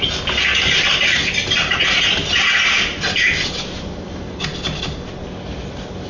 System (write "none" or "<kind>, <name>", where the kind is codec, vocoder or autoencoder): none